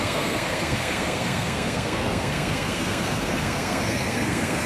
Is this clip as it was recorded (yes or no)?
no